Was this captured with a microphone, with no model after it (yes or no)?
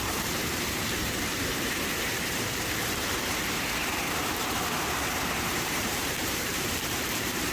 no